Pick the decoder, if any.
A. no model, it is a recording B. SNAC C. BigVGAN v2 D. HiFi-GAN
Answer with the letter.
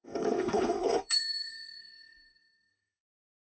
B